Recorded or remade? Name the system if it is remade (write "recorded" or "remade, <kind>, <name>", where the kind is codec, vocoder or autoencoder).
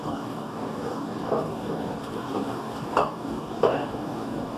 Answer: remade, codec, DAC